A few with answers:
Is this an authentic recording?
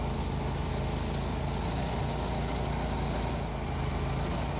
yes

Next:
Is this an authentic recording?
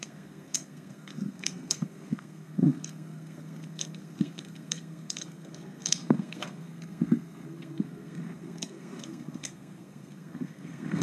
no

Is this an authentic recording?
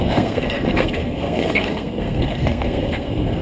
no